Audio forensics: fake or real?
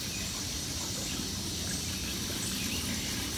real